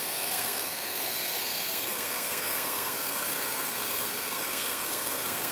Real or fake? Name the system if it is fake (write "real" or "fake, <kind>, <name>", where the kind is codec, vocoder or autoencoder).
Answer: fake, codec, SNAC